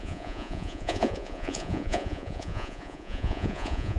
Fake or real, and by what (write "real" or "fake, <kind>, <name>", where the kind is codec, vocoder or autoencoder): fake, vocoder, Vocos